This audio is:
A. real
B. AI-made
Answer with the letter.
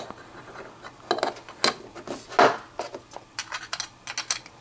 A